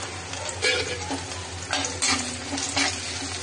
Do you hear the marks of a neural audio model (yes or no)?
no